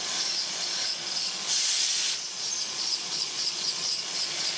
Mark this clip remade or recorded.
remade